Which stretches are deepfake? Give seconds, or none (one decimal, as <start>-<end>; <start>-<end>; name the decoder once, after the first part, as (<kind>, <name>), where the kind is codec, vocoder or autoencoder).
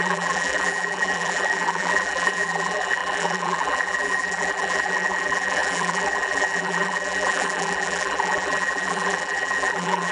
0.0-10.1 (vocoder, BigVGAN v2)